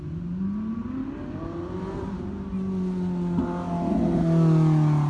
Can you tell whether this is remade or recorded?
recorded